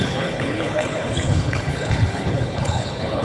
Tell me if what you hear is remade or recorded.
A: remade